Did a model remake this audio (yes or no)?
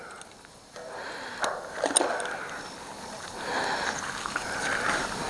no